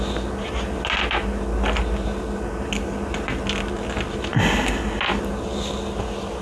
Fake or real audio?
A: real